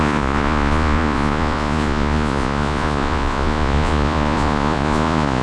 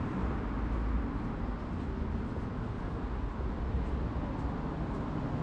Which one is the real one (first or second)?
second